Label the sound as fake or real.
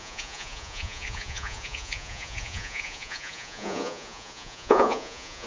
fake